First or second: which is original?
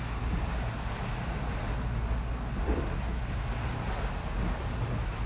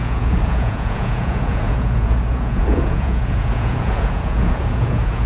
first